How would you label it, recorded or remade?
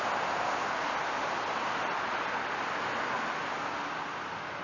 recorded